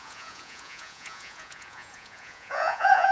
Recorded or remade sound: remade